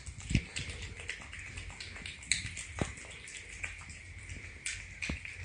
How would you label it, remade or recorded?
recorded